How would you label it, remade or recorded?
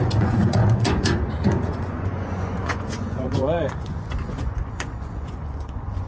remade